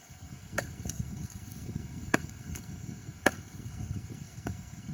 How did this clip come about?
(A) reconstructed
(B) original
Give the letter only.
A